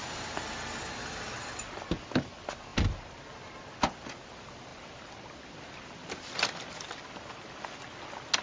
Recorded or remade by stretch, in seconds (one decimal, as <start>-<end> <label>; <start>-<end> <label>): 0.0-8.4 recorded